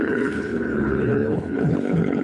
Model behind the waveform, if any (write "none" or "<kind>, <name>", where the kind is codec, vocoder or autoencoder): codec, HILCodec